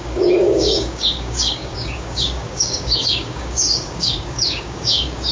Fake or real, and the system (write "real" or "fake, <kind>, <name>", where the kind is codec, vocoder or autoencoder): fake, codec, DAC